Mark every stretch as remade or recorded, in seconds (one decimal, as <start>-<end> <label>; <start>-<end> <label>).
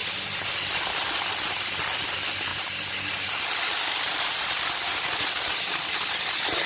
0.0-2.5 remade; 2.5-6.7 recorded